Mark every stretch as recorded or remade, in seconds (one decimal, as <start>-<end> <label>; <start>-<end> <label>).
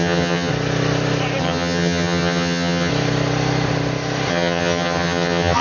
0.0-0.5 remade; 0.5-1.4 recorded; 1.4-2.9 remade; 2.9-4.3 recorded; 4.3-5.6 remade